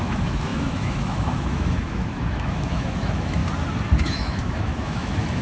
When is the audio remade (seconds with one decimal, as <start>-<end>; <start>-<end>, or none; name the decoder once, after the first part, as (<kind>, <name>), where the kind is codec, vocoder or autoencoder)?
0.0-3.4 (autoencoder, DAC-VAE); 4.0-5.4